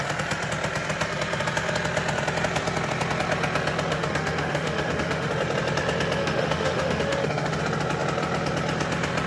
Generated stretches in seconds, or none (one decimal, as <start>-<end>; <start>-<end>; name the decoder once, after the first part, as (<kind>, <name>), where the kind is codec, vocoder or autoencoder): 3.9-5.3 (autoencoder, DAC-VAE); 6.2-7.6